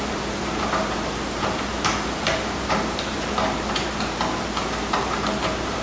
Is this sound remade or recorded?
remade